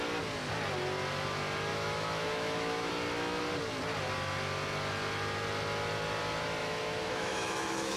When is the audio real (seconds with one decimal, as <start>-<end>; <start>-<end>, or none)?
0.0-1.7; 2.9-6.6